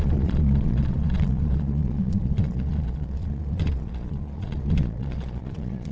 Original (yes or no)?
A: no